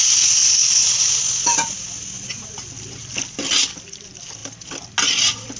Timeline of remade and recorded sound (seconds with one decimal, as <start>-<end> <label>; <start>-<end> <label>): 0.0-5.6 recorded